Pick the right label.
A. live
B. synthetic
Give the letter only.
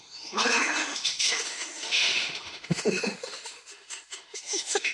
B